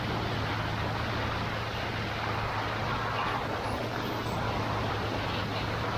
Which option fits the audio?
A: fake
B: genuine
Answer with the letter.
B